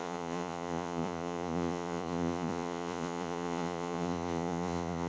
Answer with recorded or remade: remade